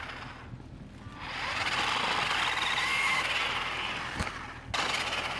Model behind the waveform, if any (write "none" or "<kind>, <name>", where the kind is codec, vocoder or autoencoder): none